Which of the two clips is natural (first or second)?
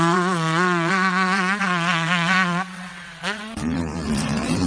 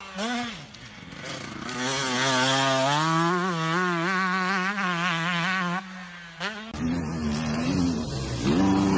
second